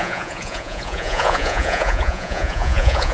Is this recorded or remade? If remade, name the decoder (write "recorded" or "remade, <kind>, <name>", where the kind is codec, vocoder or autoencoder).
remade, vocoder, Vocos